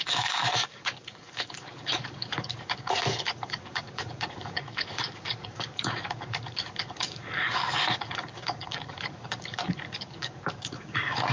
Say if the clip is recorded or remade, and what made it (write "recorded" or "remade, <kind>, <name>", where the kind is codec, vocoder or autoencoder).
remade, codec, DAC